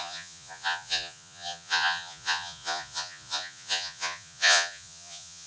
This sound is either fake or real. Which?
fake